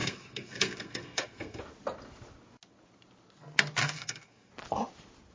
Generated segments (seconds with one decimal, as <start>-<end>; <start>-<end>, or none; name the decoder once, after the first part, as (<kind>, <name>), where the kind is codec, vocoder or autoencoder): 0.0-1.6 (codec, SNAC); 3.8-4.5